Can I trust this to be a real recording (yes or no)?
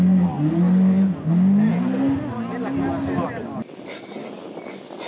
yes